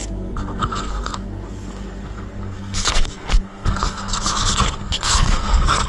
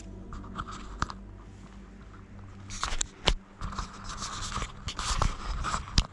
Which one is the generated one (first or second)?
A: first